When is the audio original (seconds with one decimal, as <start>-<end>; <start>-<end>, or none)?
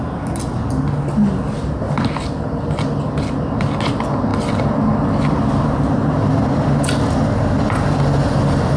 0.0-8.8